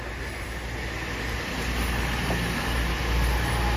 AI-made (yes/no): no